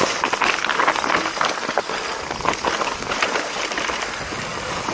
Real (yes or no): yes